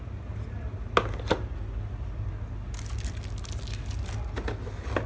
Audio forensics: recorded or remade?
recorded